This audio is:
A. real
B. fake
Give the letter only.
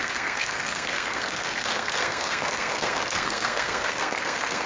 B